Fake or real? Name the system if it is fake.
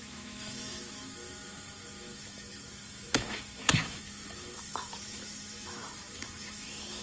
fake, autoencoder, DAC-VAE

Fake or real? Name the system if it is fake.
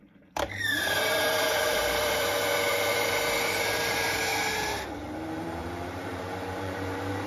fake, vocoder, BigVGAN v2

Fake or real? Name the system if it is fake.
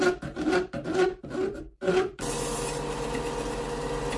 real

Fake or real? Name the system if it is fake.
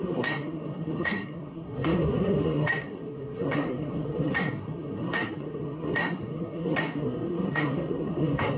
fake, codec, SNAC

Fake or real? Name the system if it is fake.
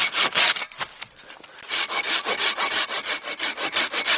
real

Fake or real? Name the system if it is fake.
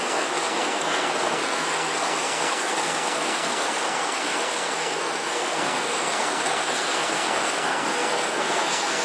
fake, codec, SNAC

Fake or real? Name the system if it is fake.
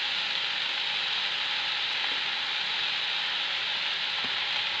real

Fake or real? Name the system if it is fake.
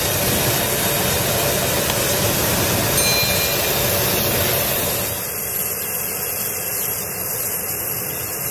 real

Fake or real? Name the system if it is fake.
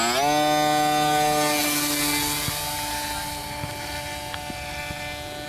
real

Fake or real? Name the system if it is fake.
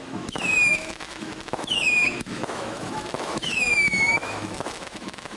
fake, autoencoder, DAC-VAE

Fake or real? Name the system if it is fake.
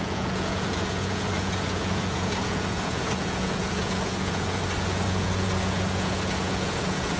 fake, vocoder, Vocos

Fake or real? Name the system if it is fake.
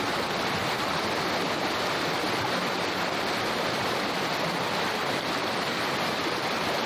real